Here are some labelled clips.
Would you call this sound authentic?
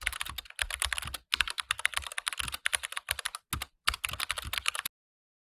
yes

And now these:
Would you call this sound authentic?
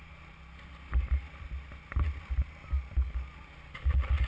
yes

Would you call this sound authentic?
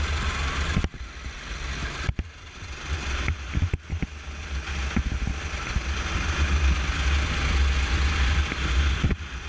yes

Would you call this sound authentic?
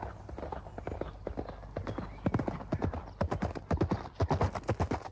yes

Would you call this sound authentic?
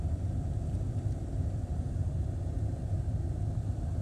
yes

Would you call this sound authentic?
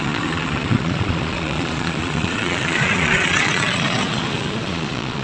no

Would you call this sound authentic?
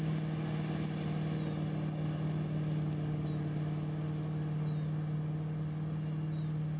yes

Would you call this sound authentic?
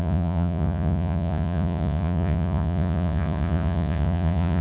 no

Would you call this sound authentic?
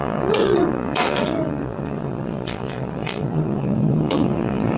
no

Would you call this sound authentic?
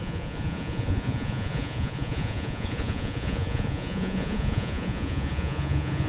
no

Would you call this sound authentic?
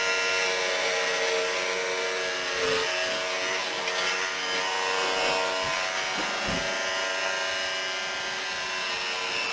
yes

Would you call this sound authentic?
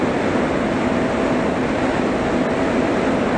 yes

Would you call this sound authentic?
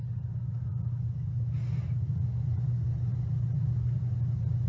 yes